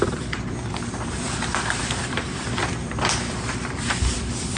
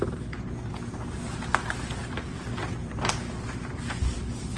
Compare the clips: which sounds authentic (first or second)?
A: second